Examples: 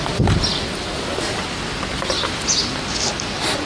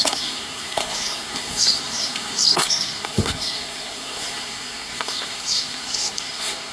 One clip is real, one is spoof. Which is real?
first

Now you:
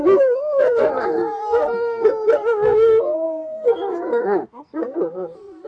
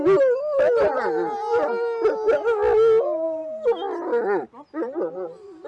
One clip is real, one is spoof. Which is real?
second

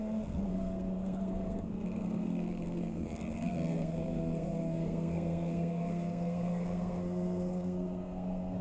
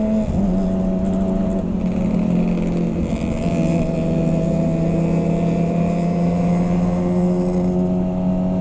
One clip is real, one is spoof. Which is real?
second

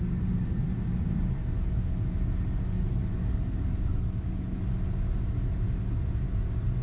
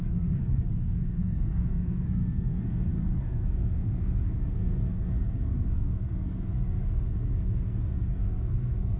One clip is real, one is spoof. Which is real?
first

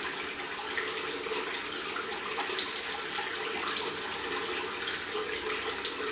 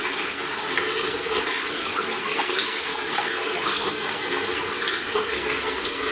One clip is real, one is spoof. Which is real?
first